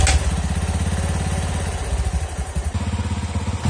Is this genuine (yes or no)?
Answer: yes